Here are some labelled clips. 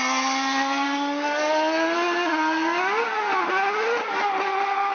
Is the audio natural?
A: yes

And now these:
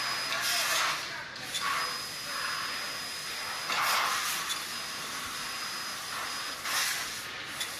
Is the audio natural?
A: yes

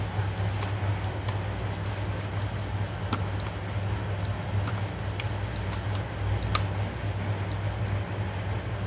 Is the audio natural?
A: yes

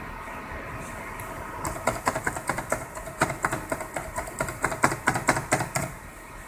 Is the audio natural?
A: no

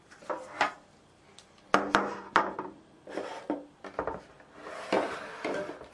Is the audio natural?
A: yes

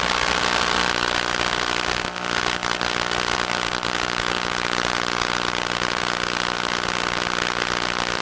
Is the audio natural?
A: yes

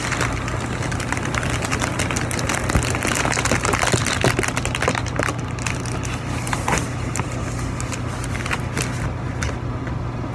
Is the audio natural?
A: yes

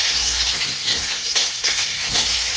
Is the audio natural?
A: no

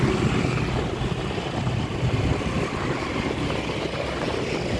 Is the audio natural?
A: yes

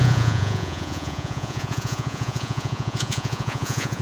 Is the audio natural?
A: no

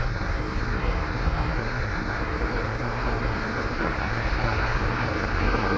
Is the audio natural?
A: no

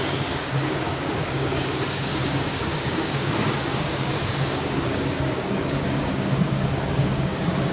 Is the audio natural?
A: no